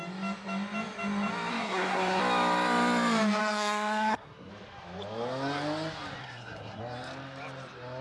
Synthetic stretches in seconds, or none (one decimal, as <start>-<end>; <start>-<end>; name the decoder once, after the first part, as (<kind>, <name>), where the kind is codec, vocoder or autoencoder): 1.5-2.2 (codec, SNAC); 3.4-4.5; 6.2-6.8